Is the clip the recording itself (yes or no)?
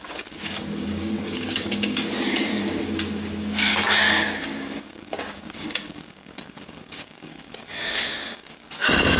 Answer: no